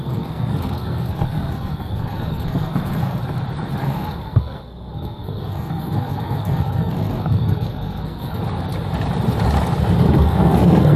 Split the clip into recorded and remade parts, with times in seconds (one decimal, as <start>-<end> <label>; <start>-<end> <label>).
0.0-3.2 remade; 3.2-3.8 recorded; 3.8-8.4 remade; 8.4-10.0 recorded; 10.0-11.0 remade